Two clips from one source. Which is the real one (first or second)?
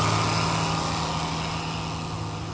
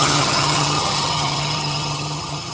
first